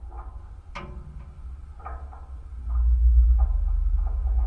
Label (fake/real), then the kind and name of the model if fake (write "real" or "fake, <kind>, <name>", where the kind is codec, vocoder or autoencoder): real